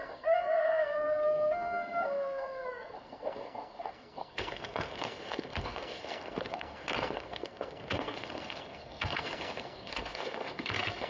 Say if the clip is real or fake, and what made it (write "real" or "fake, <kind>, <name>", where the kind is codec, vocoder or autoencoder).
fake, codec, SNAC